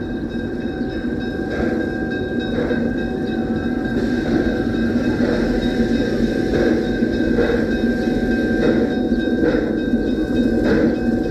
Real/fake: real